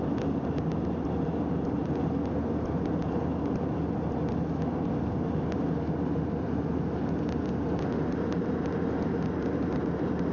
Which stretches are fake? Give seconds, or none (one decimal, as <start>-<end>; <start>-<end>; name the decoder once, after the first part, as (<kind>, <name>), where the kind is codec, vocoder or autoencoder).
none